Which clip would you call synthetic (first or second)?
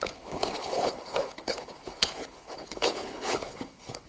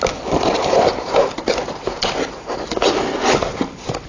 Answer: first